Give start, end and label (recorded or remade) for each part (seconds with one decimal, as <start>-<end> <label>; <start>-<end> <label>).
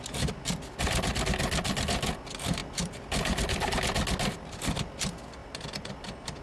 0.0-5.4 recorded; 5.4-5.9 remade; 5.9-6.4 recorded